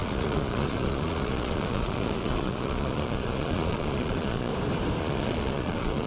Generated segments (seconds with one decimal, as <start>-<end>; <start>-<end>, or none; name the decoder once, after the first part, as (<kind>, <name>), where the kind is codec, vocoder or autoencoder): 0.0-4.5 (vocoder, Vocos); 5.0-6.1